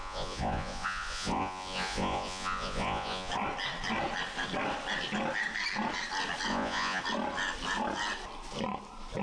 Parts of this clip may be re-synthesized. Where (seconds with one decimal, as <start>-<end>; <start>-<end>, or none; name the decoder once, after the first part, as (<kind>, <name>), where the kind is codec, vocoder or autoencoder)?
0.0-3.3 (vocoder, Vocos); 6.5-7.0